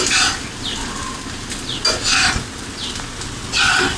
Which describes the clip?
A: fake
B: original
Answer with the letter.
B